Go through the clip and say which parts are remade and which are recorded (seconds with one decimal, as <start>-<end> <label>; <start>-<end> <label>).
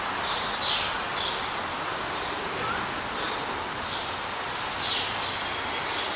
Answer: 0.0-6.2 recorded